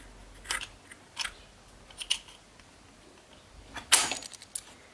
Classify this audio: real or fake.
real